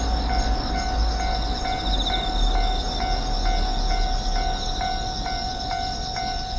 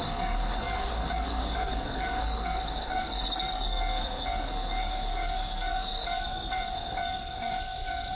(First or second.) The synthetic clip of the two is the second